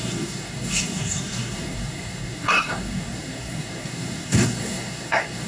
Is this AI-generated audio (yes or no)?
yes